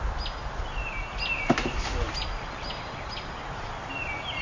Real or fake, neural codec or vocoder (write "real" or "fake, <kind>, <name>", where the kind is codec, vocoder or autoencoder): real